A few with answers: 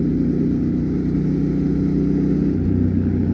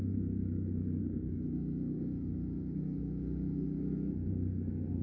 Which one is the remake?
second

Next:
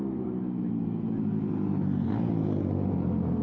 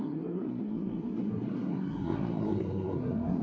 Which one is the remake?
second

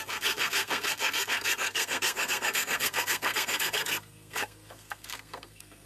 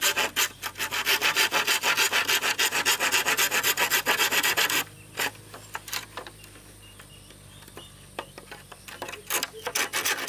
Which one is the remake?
first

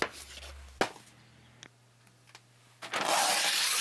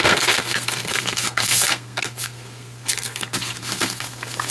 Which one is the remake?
second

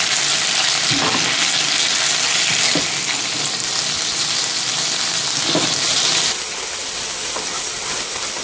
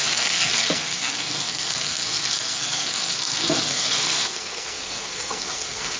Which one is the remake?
second